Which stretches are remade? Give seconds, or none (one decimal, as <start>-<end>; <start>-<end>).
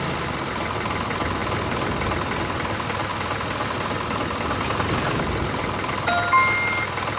none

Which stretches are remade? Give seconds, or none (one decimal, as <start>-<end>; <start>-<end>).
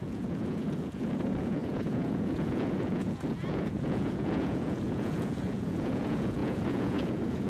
0.0-7.5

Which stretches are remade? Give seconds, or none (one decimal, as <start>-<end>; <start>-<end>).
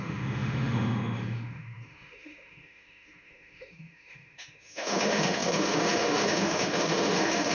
0.0-7.5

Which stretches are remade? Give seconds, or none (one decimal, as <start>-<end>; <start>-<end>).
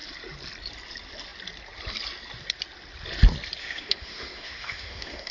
3.6-5.3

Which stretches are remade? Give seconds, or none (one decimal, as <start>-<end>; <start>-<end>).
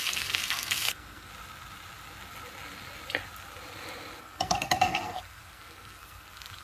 0.0-1.3; 4.2-6.6